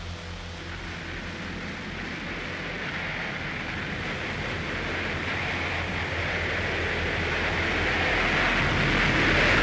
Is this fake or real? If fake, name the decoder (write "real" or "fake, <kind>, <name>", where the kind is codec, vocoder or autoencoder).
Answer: real